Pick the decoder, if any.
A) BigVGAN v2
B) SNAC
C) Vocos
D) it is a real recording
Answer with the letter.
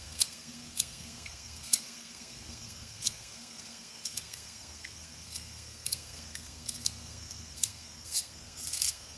B